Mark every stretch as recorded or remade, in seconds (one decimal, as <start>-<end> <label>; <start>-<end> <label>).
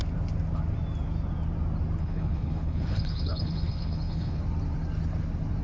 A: 0.0-2.0 recorded; 2.0-4.4 remade; 4.4-5.6 recorded